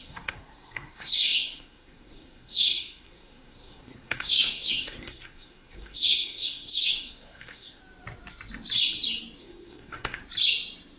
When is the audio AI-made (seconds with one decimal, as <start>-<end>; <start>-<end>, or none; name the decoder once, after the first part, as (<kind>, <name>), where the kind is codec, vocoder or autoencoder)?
0.0-7.8 (codec, SNAC); 9.4-10.2